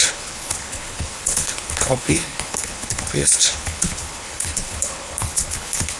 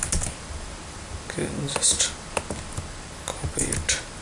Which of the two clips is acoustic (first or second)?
second